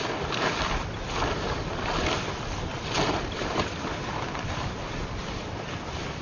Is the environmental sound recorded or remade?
recorded